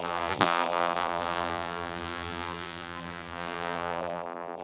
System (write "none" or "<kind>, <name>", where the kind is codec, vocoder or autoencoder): vocoder, BigVGAN v2